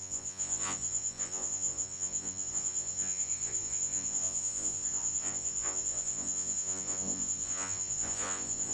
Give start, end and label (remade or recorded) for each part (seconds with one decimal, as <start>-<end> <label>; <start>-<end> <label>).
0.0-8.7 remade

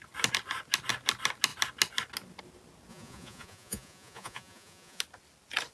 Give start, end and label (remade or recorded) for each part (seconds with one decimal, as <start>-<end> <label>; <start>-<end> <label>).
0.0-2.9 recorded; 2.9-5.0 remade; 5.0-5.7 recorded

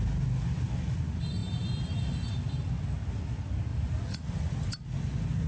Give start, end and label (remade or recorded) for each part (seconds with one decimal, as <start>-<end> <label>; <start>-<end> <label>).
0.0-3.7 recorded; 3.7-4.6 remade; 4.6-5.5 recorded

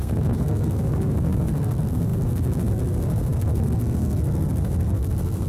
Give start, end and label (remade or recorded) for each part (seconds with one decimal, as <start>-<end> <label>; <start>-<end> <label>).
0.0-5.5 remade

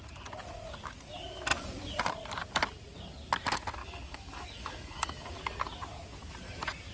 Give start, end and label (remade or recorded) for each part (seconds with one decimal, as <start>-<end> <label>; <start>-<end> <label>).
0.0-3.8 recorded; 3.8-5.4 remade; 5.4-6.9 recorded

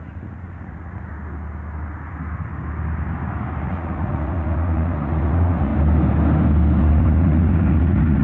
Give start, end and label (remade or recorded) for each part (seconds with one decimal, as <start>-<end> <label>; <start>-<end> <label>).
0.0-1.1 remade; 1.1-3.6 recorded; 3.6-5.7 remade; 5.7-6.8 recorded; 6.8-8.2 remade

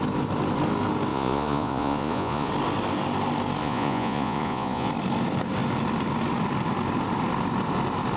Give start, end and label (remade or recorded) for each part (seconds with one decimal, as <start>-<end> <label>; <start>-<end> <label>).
0.0-1.1 recorded; 1.1-2.5 remade; 2.5-3.6 recorded; 3.6-4.9 remade; 4.9-8.2 recorded